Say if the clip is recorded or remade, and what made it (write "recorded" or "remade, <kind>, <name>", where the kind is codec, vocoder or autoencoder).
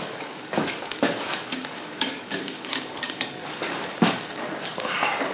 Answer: remade, codec, DAC